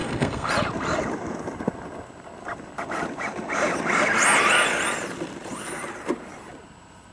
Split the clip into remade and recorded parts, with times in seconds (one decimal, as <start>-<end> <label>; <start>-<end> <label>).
0.0-0.5 remade; 0.5-7.1 recorded

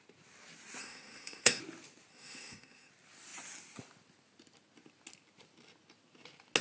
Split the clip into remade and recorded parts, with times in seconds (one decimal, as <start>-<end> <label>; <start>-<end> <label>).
0.0-0.8 recorded; 0.8-1.6 remade; 1.6-2.1 recorded; 2.1-2.9 remade; 2.9-6.6 recorded

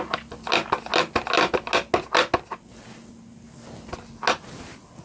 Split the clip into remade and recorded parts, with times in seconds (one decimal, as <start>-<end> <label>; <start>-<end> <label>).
0.0-5.0 recorded

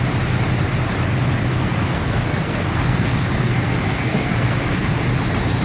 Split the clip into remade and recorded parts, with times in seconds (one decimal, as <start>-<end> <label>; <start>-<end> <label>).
0.0-1.5 recorded; 1.5-4.9 remade; 4.9-5.6 recorded

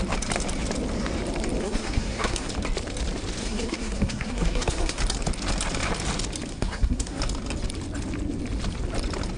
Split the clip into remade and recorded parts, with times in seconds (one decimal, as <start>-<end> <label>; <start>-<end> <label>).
0.0-1.6 recorded; 1.6-2.5 remade; 2.5-3.4 recorded; 3.4-5.0 remade; 5.0-6.5 recorded; 6.5-7.2 remade; 7.2-9.4 recorded